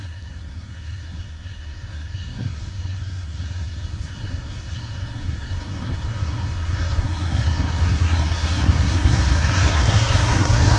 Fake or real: fake